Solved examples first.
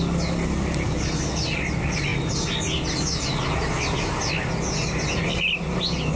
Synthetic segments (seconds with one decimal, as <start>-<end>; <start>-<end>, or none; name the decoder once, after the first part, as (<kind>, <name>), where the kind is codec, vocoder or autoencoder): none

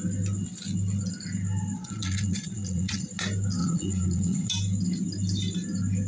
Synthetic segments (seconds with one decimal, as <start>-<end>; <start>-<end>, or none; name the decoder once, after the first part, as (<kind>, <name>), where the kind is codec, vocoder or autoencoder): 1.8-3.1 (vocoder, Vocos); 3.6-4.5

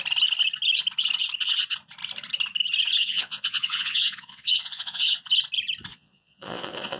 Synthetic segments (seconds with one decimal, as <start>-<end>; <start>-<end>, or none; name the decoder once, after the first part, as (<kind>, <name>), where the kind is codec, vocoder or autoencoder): 3.0-5.2 (vocoder, Vocos); 5.9-7.0